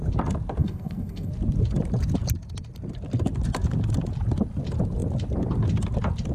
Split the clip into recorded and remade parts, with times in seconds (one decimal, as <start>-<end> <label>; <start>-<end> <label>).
0.0-0.6 recorded; 0.6-1.3 remade; 1.3-6.3 recorded